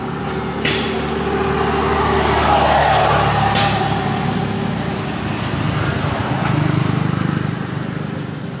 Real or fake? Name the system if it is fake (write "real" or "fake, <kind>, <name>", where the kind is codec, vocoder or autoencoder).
real